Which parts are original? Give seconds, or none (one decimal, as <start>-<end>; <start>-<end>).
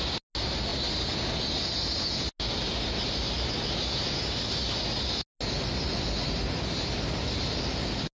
0.0-8.2